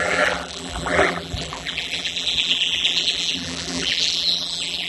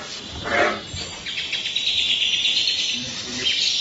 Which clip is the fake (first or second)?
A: first